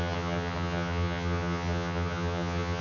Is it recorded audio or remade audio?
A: remade